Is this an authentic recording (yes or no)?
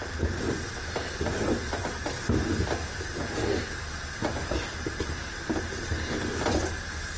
yes